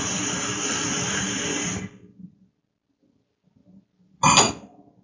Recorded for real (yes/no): yes